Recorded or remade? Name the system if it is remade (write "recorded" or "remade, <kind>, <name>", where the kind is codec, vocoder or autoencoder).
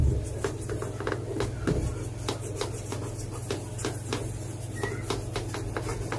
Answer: recorded